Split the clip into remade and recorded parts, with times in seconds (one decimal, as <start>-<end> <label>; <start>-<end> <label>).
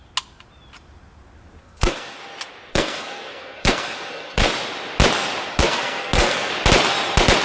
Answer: 0.0-1.6 recorded; 1.6-2.2 remade; 2.2-2.7 recorded; 2.7-4.5 remade; 4.5-5.5 recorded; 5.5-6.5 remade; 6.5-7.4 recorded